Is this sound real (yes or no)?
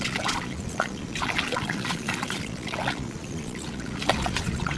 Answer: no